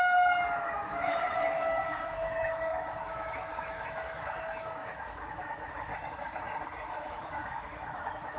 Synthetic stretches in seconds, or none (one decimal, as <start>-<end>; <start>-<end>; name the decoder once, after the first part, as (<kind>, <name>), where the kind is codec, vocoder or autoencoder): 0.0-5.9 (autoencoder, DAC-VAE); 6.9-8.4